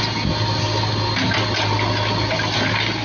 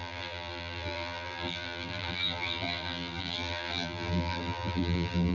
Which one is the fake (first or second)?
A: second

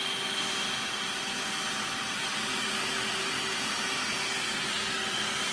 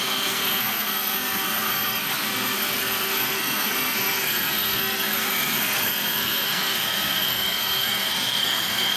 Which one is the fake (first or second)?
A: second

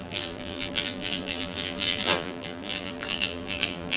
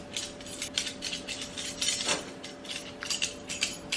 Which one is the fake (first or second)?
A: first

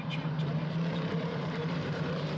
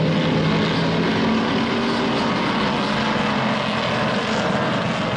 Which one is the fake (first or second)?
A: first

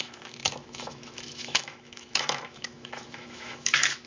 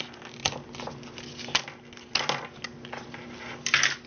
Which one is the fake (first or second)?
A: first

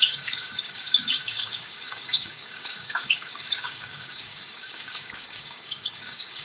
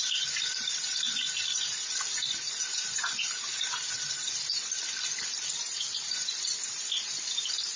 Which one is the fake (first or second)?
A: first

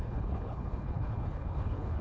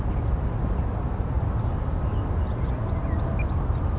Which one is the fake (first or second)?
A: first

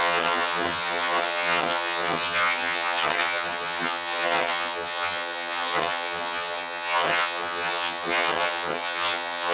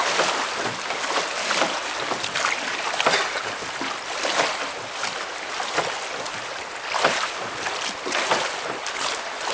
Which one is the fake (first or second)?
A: first